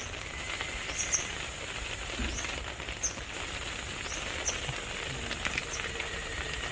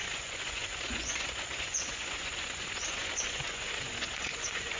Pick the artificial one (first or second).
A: second